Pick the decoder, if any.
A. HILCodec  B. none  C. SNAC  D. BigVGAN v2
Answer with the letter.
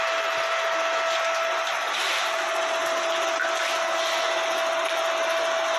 B